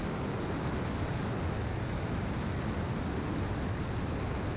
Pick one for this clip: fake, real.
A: real